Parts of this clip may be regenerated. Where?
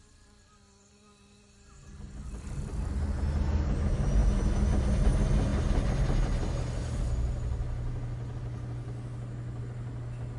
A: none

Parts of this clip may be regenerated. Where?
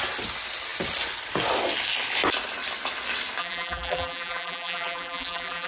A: 3.4-5.7 (vocoder, BigVGAN v2)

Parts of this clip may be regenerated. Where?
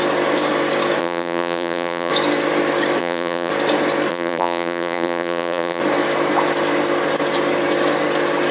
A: 1.0-2.1 (vocoder, BigVGAN v2); 3.0-3.5; 4.1-5.8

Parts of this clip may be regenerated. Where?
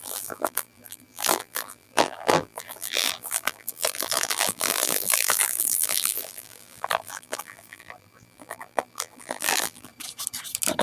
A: 0.0-9.9 (vocoder, BigVGAN v2)